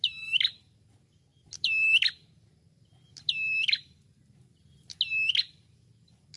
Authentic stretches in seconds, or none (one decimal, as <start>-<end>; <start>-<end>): 0.0-6.4